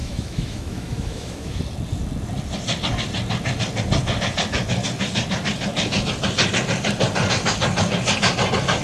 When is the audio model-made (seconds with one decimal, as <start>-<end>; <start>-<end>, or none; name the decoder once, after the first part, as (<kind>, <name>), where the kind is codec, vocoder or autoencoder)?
0.0-1.6 (autoencoder, DAC-VAE)